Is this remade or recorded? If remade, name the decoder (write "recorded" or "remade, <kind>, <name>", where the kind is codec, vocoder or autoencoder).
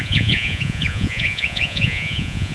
remade, vocoder, Vocos